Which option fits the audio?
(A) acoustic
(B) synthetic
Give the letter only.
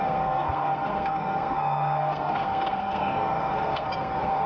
B